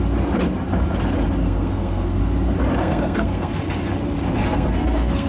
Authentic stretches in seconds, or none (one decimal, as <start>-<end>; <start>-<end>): 0.0-1.4; 2.2-2.8; 3.6-4.4